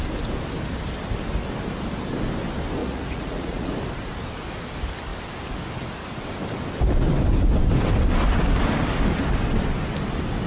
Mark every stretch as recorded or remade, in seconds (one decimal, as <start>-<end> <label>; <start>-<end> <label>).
0.0-2.8 recorded; 2.8-3.7 remade; 3.7-10.5 recorded